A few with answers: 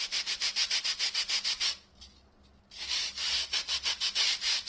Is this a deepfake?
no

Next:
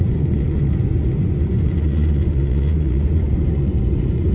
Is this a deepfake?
yes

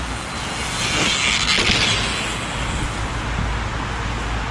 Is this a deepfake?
no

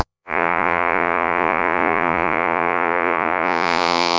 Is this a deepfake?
yes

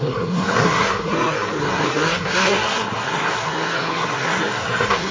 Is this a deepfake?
yes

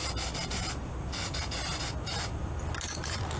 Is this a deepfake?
no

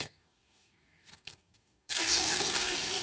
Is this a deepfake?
yes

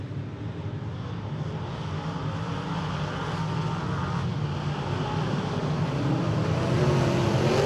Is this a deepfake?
no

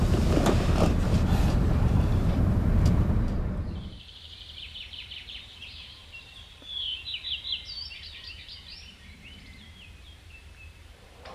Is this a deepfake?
yes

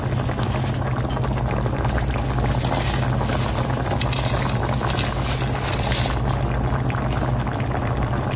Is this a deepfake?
no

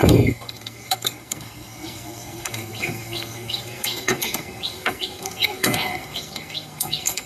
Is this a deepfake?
yes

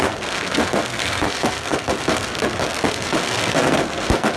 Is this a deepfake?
yes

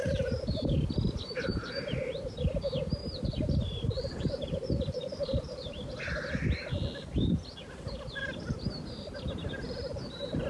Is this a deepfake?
yes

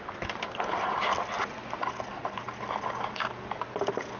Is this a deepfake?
no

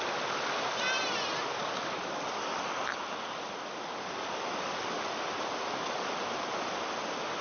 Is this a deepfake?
no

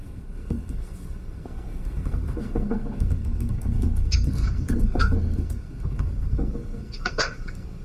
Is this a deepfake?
yes